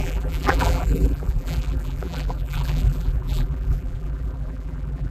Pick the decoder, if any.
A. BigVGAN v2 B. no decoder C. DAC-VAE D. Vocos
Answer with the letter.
A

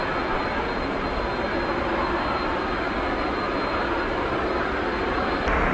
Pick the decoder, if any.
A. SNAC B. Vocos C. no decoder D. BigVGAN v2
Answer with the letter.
C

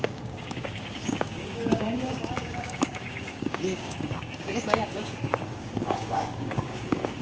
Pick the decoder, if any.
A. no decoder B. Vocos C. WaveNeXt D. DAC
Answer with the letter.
D